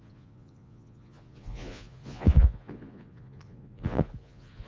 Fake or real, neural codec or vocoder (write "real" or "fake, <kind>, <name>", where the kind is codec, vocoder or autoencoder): fake, vocoder, Vocos